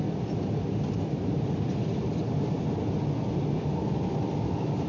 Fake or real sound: real